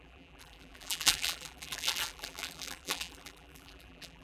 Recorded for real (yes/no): no